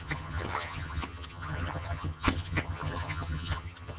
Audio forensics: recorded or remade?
remade